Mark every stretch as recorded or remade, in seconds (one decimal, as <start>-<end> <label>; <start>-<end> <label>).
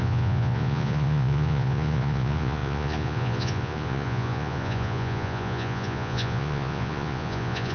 0.0-7.7 remade